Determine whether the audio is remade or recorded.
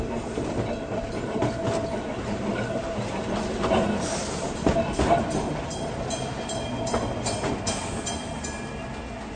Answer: recorded